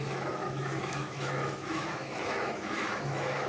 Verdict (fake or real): fake